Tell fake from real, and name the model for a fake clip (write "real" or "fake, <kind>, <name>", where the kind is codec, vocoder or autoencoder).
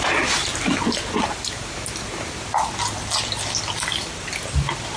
real